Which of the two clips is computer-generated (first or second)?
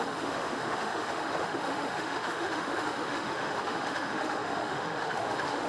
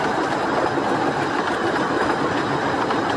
first